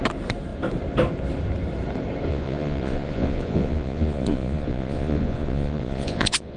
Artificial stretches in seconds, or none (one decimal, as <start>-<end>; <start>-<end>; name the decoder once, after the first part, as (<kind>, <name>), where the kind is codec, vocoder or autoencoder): 2.3-6.6 (vocoder, Vocos)